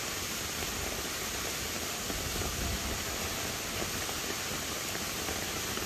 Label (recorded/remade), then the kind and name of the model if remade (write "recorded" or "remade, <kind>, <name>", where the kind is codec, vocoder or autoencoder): recorded